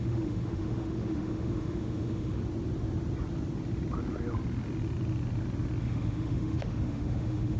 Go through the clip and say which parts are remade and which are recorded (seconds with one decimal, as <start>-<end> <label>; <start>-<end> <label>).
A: 0.0-2.4 remade; 2.4-5.8 recorded; 5.8-7.6 remade